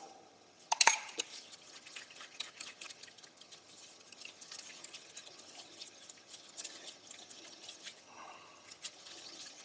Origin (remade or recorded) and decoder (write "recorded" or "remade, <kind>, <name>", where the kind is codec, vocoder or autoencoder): remade, vocoder, HiFi-GAN